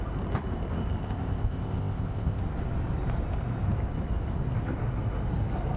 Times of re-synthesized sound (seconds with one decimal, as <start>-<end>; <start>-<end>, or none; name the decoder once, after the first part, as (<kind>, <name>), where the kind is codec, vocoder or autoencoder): 1.0-2.4 (codec, ZipCodec)